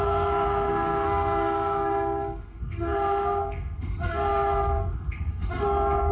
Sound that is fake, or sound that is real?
fake